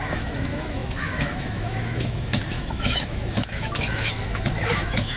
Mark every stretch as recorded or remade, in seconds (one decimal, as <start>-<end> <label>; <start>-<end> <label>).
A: 0.0-5.2 remade